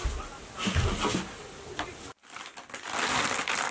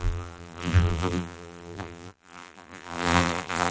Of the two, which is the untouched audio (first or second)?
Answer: first